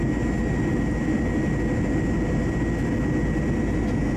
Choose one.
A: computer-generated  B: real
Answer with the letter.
B